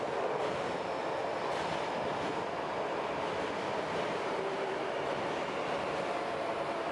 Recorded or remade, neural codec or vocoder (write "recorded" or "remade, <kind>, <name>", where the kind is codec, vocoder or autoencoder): recorded